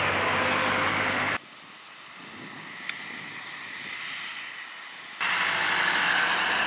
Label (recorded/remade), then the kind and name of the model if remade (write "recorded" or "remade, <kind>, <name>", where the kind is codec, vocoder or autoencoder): recorded